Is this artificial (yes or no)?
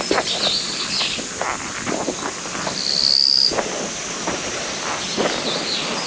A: no